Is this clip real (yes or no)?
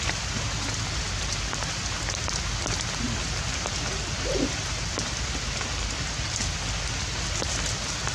yes